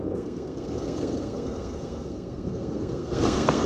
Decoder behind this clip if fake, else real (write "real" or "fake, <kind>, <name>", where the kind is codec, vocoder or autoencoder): fake, codec, SNAC